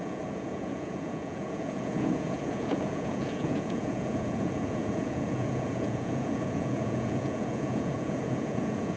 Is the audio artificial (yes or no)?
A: yes